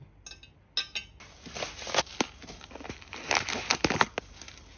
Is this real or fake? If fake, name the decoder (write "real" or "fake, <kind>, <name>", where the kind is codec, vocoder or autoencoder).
real